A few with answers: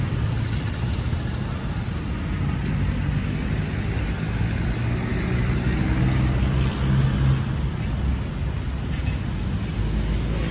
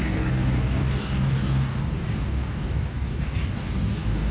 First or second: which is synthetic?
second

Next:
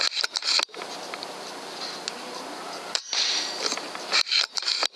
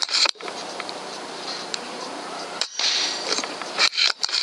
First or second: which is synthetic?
second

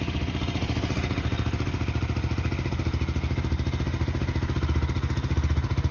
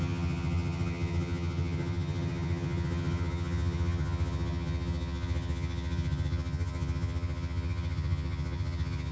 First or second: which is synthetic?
second